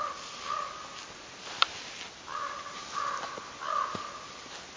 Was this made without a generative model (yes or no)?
yes